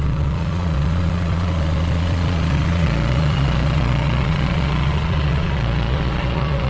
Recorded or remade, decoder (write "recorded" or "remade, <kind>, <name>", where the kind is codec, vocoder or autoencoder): remade, vocoder, Vocos